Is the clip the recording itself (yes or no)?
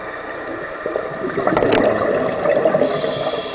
yes